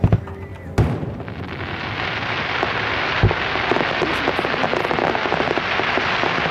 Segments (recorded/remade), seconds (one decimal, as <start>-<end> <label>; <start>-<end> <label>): 0.0-6.5 recorded

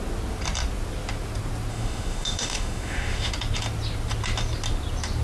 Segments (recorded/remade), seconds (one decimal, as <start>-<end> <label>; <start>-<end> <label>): 0.0-1.7 recorded; 1.7-3.3 remade; 3.3-5.2 recorded

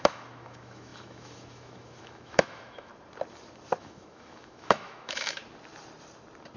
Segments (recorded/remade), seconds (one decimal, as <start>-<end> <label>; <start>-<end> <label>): 0.0-2.9 remade; 2.9-3.8 recorded; 3.8-5.4 remade; 5.4-6.6 recorded

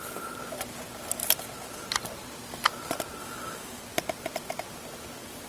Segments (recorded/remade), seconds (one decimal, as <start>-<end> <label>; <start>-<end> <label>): 0.0-3.2 recorded; 3.2-3.8 remade; 3.8-5.5 recorded

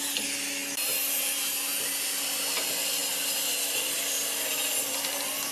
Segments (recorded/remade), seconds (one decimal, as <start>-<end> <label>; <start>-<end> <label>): 0.0-5.5 recorded

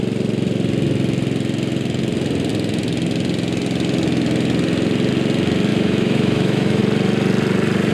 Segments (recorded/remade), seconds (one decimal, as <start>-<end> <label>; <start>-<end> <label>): 0.0-5.7 recorded; 5.7-6.8 remade; 6.8-7.9 recorded

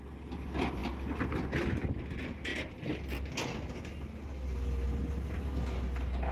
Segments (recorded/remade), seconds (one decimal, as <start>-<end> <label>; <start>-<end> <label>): 0.0-6.3 recorded